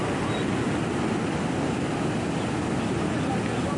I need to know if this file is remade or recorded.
recorded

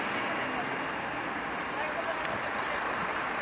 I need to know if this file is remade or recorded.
recorded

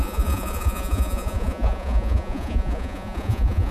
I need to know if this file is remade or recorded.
remade